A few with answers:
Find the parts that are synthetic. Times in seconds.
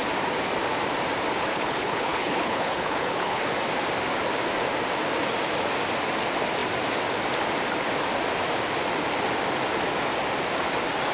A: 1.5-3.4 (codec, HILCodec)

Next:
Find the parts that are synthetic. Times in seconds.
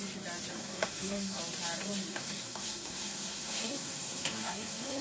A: 0.5-1.4 (codec, SNAC); 2.1-5.0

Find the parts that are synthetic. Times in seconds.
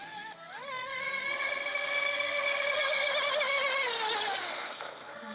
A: 0.0-3.1 (codec, SNAC); 4.5-5.3